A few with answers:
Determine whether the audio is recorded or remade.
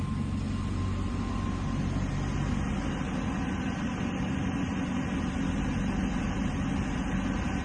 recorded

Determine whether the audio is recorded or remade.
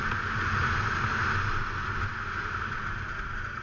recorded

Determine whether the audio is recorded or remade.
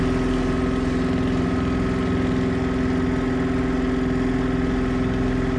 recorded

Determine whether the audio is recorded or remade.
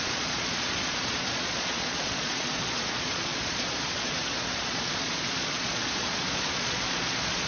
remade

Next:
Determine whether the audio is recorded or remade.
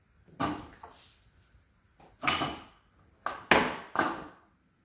recorded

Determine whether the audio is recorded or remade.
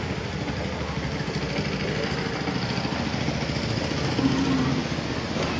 recorded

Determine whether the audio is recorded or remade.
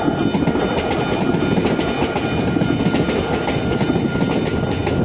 recorded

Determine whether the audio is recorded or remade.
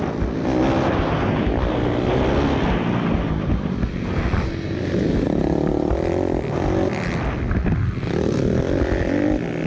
recorded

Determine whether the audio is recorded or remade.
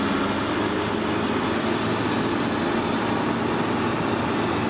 recorded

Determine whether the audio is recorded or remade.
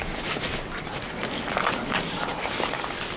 recorded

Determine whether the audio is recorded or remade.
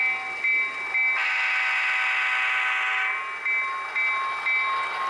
recorded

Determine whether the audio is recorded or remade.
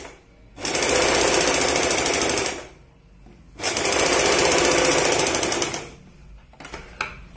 recorded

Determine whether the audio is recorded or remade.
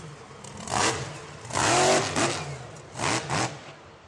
recorded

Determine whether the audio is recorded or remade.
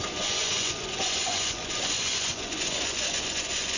remade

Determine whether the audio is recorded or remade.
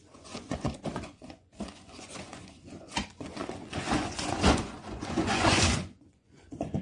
remade